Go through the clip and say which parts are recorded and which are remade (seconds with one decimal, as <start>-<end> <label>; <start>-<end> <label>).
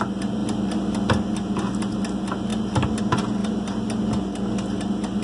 0.0-5.2 recorded